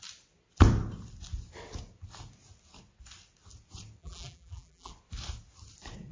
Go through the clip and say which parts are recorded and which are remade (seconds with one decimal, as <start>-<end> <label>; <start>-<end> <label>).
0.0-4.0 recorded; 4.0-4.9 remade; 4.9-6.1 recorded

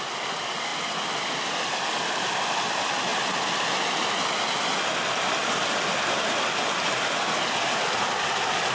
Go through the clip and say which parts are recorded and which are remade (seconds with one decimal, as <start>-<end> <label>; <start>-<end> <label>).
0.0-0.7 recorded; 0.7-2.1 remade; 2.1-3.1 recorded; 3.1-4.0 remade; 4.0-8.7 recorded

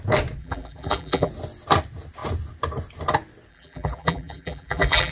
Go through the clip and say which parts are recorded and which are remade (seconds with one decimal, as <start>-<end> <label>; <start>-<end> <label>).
0.0-0.4 recorded; 0.4-1.3 remade; 1.3-3.5 recorded; 3.5-5.1 remade

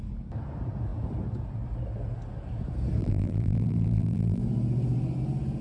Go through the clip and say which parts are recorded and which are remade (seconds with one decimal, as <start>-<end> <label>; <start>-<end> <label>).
0.0-3.0 recorded; 3.0-4.4 remade; 4.4-5.6 recorded

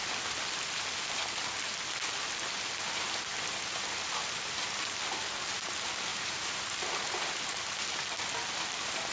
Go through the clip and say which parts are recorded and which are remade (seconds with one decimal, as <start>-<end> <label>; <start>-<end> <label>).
0.0-6.1 recorded; 6.1-6.7 remade; 6.7-9.1 recorded

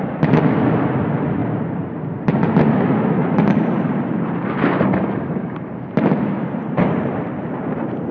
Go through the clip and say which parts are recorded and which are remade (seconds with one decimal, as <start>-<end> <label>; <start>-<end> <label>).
0.0-1.4 recorded; 1.4-2.5 remade; 2.5-3.2 recorded; 3.2-7.4 remade; 7.4-8.1 recorded

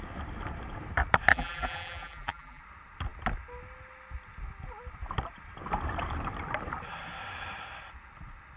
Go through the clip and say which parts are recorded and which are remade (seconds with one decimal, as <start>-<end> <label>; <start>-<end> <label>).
0.0-1.3 recorded; 1.3-2.6 remade; 2.6-8.6 recorded

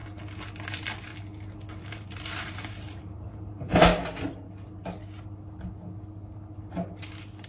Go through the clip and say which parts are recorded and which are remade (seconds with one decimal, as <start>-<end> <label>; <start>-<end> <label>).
0.0-0.7 recorded; 0.7-1.1 remade; 1.1-1.8 recorded; 1.8-3.9 remade; 3.9-7.5 recorded